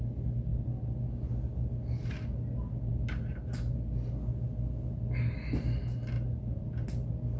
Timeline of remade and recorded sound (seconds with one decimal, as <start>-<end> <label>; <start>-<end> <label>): 0.0-7.4 recorded